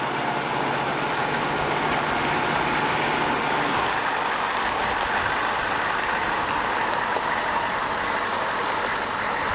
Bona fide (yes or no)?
yes